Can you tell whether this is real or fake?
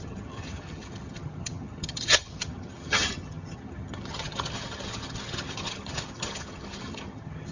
fake